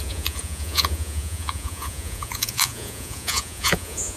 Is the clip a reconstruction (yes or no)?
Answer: yes